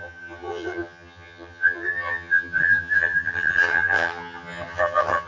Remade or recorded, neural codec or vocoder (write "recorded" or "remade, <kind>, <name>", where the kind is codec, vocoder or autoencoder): remade, vocoder, HiFi-GAN